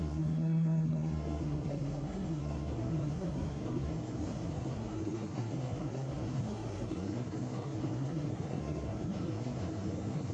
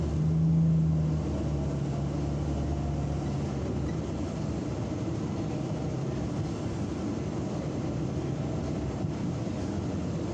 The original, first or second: second